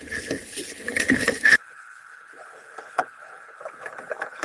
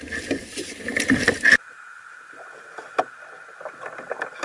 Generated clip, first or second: first